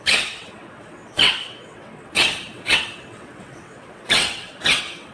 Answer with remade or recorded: remade